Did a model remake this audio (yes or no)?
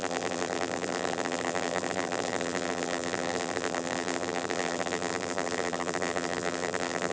yes